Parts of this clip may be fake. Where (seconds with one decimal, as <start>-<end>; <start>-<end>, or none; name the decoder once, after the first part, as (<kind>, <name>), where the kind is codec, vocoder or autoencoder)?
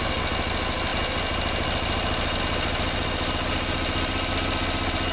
none